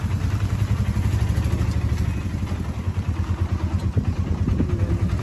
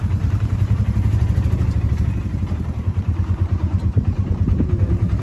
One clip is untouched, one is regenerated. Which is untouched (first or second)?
first